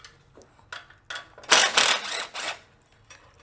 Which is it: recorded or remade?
recorded